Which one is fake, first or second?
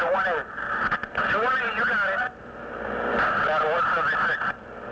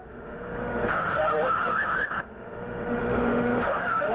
second